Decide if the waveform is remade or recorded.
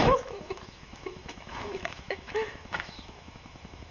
remade